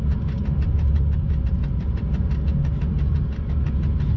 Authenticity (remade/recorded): recorded